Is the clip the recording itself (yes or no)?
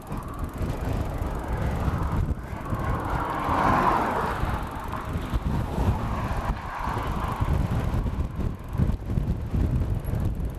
yes